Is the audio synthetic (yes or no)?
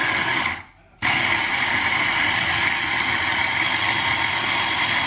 no